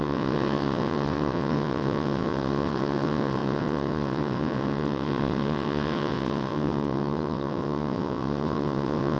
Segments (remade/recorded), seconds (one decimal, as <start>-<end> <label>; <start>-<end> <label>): 0.0-9.2 remade